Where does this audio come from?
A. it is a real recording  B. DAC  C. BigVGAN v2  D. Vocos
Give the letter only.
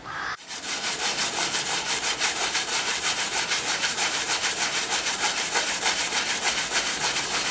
C